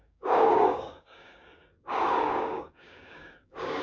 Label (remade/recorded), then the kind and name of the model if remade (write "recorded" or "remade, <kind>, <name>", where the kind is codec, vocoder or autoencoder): remade, codec, DAC